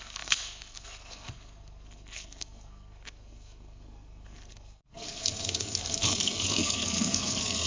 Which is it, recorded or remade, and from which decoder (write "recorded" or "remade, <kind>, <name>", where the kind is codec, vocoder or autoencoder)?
remade, codec, SNAC